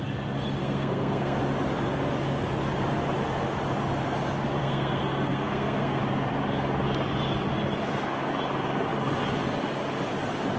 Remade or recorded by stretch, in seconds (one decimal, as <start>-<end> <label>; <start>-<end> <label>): 0.0-0.6 recorded; 0.6-1.4 remade; 1.4-4.6 recorded; 4.6-6.0 remade; 6.0-10.6 recorded